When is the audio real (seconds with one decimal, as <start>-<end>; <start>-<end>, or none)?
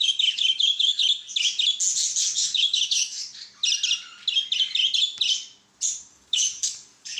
1.0-2.2; 3.3-6.0